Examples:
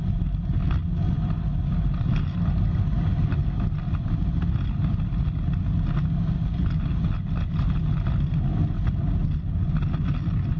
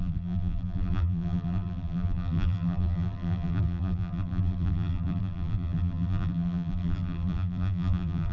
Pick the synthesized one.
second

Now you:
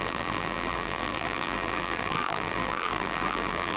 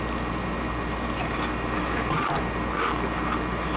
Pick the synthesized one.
first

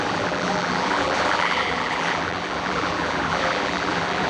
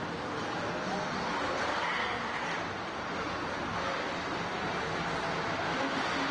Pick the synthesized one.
first